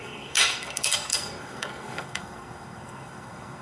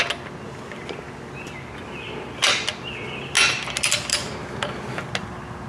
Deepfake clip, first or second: first